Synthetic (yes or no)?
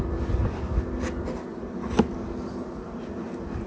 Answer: no